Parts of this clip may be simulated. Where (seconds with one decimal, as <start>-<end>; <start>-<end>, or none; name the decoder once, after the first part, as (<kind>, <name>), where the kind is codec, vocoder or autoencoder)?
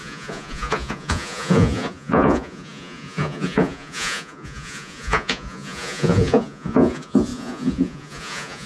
0.0-8.7 (vocoder, Vocos)